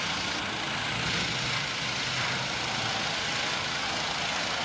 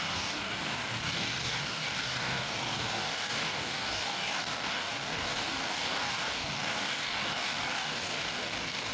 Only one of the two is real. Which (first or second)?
first